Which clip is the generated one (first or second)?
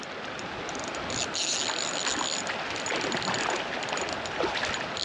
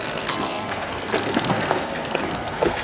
second